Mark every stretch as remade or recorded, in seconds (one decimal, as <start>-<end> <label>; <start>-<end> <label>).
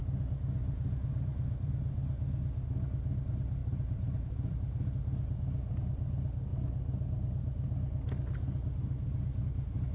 0.0-0.6 recorded; 0.6-1.7 remade; 1.7-3.6 recorded; 3.6-4.9 remade; 4.9-9.9 recorded